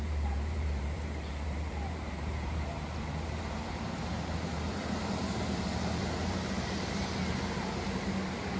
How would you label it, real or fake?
fake